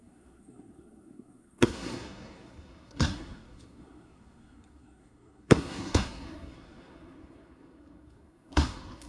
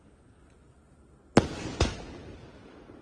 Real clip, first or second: second